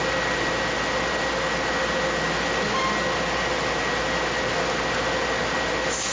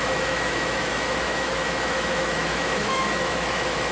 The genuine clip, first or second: first